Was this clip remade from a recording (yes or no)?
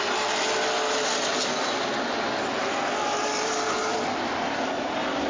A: no